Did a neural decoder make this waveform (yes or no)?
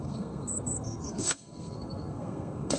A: yes